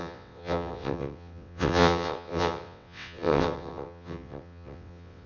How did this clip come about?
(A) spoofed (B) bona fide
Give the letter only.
A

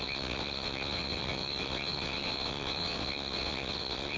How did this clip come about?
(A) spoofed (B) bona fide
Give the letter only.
A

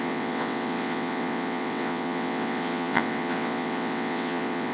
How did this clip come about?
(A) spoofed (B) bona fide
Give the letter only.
A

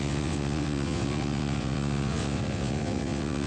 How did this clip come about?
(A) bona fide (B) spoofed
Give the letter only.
B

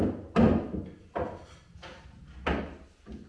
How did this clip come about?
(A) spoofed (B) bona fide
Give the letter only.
B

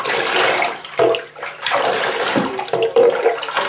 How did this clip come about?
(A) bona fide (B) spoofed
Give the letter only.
A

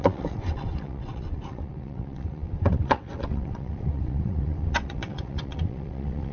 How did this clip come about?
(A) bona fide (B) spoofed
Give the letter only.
B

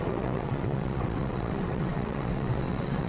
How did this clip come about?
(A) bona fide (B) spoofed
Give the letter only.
B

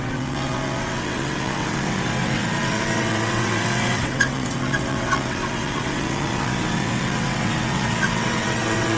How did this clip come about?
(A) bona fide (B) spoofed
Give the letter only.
B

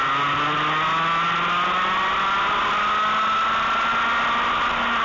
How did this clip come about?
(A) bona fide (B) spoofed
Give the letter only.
A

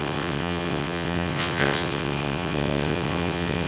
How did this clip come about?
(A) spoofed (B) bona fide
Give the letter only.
A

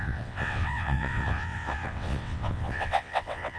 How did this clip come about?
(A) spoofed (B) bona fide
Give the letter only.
A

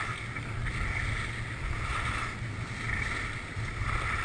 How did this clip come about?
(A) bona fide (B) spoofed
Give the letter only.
A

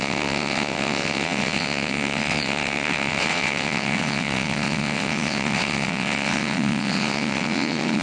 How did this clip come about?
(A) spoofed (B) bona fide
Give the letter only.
A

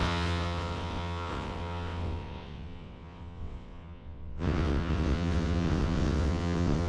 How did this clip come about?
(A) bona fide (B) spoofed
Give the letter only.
B